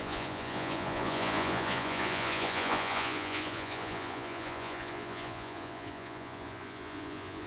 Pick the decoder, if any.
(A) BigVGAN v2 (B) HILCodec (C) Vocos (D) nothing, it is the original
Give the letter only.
C